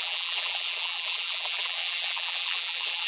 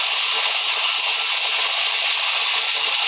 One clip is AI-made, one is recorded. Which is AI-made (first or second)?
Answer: first